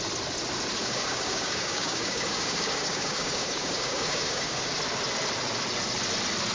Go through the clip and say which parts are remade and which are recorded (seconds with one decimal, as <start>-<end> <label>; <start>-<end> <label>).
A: 0.0-0.8 recorded; 0.8-4.7 remade; 4.7-6.5 recorded